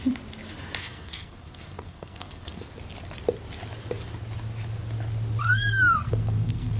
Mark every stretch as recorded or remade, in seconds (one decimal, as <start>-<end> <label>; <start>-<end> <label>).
0.0-0.8 recorded; 0.8-2.7 remade; 2.7-5.4 recorded; 5.4-6.8 remade